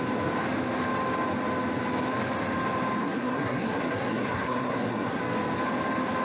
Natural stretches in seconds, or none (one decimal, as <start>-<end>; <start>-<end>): 0.0-3.0; 5.2-6.2